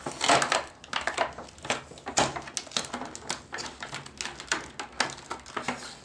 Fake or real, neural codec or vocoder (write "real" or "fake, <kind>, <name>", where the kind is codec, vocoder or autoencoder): real